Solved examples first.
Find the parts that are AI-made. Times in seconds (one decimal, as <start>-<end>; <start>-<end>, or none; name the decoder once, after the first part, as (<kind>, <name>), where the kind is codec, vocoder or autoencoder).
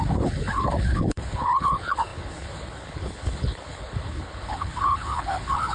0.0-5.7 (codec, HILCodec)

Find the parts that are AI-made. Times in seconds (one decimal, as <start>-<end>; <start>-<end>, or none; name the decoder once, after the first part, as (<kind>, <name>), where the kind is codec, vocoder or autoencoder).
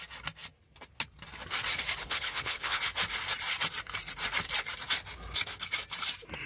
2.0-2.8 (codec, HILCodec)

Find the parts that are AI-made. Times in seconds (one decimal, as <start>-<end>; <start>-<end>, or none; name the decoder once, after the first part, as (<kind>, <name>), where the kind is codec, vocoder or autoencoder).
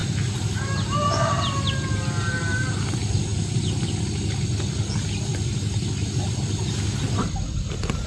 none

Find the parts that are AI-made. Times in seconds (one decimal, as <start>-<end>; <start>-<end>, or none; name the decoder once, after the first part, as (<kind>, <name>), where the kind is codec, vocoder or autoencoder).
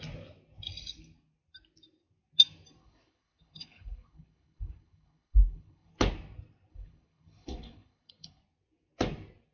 2.8-5.9 (codec, HILCodec); 6.7-8.4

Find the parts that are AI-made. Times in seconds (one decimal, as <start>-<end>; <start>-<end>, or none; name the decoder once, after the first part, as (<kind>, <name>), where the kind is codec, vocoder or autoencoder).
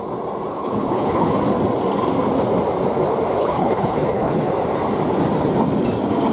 0.5-1.4 (codec, HILCodec); 3.4-4.5